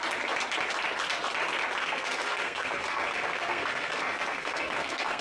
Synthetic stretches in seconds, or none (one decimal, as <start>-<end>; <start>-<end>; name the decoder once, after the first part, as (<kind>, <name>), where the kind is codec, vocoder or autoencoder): 1.8-5.2 (codec, SNAC)